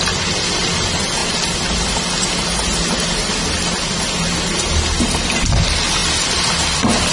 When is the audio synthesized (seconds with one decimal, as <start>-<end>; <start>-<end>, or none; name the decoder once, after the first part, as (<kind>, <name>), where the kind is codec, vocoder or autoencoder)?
none